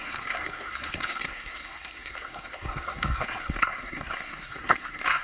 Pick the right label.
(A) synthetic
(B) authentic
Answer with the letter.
A